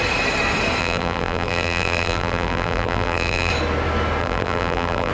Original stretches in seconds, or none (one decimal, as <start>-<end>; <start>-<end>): 0.0-0.8; 3.5-4.2